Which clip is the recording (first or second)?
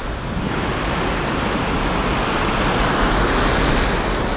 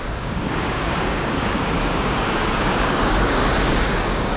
first